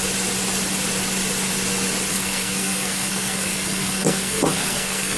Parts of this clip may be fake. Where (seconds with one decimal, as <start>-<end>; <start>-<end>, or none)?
2.1-5.2